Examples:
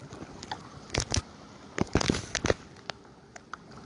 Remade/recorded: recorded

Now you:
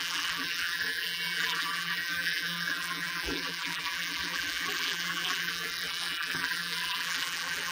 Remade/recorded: remade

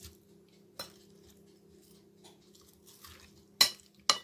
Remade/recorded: recorded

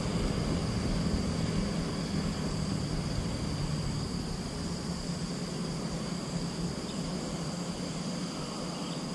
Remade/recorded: recorded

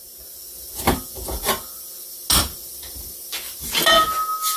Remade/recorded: recorded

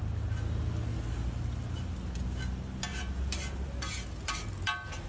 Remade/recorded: recorded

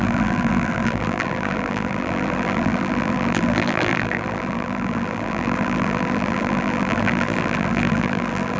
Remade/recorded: remade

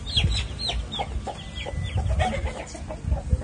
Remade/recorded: recorded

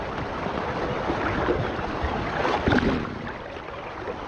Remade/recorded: recorded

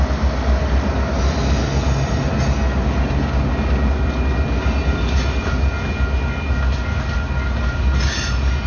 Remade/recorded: recorded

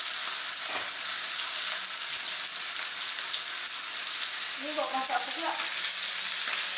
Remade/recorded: recorded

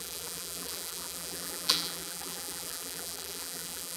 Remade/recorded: remade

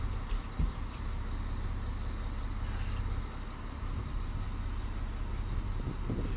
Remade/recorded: recorded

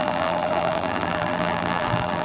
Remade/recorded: remade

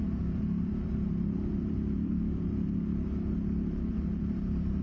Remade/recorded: remade